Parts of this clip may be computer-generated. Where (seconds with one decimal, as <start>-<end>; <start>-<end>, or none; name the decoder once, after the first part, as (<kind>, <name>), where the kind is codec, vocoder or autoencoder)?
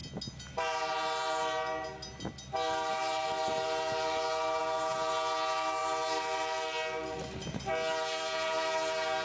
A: none